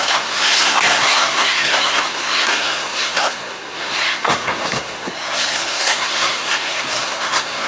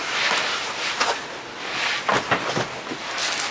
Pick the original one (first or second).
second